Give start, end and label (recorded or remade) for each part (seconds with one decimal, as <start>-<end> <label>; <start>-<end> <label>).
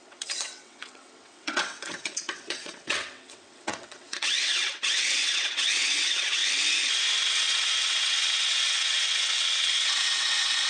0.0-6.4 remade; 6.4-7.3 recorded; 7.3-10.7 remade